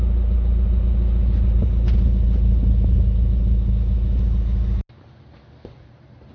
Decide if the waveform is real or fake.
real